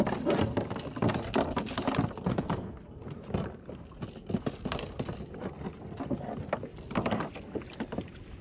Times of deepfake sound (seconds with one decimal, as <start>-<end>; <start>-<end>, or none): 2.3-3.0